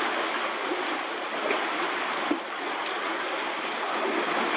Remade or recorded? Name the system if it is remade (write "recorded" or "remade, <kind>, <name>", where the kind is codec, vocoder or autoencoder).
recorded